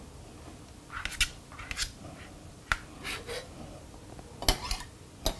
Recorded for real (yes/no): yes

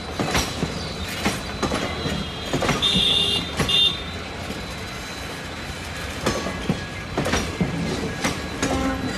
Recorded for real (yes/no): yes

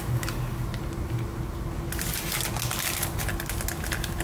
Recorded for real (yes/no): yes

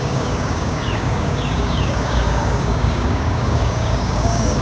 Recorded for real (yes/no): no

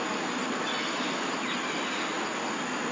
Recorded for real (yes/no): yes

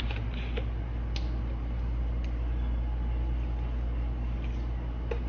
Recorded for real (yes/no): yes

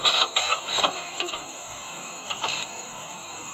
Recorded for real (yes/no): no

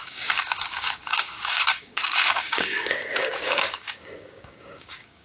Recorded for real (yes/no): no